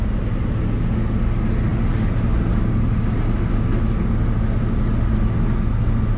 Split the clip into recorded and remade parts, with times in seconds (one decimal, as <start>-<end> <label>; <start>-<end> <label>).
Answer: 0.0-6.2 recorded